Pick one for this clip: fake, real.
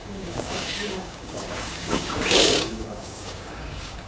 fake